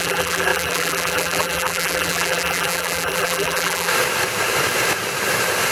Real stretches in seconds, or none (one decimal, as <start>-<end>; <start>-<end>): 3.9-5.7